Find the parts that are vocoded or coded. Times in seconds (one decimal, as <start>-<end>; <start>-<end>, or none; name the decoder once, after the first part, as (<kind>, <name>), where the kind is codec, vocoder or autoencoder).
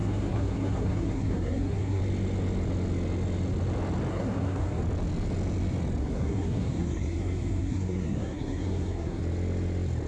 0.0-2.0 (codec, SNAC); 4.1-4.8; 6.0-9.2